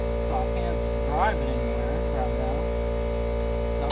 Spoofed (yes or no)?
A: no